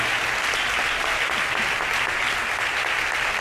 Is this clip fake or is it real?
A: real